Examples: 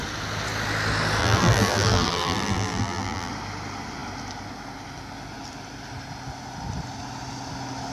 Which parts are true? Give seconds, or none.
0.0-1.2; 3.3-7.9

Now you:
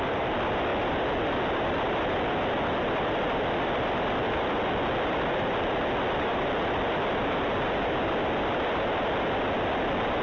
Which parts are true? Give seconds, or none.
0.0-0.7; 5.5-10.2

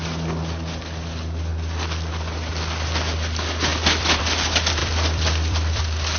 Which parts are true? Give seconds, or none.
0.0-3.7; 4.2-4.8; 5.8-6.2